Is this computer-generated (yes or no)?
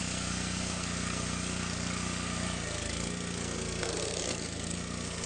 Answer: yes